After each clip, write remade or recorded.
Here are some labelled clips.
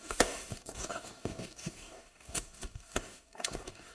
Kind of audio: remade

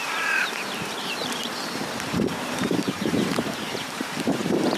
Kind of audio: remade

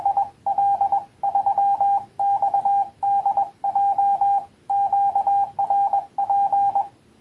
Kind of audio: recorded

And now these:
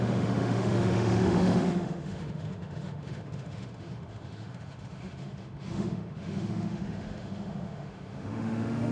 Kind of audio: remade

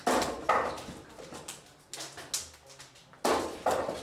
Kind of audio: recorded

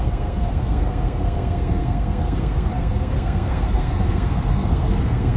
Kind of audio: remade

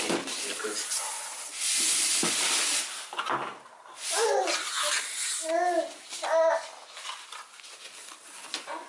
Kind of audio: recorded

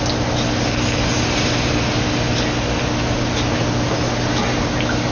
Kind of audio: recorded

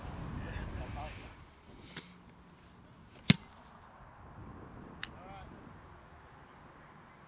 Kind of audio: recorded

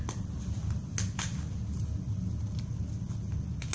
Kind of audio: recorded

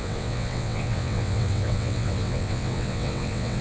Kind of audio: remade